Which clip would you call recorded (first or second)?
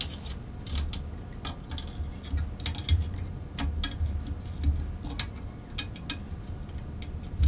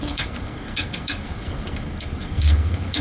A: first